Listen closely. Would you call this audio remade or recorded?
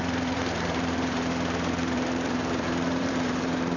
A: remade